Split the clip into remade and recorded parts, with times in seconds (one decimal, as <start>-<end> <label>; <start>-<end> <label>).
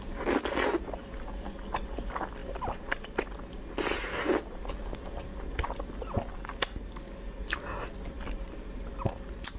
0.0-2.4 recorded; 2.4-3.2 remade; 3.2-9.6 recorded